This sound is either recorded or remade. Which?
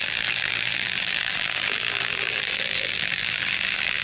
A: remade